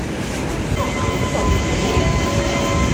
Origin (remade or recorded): recorded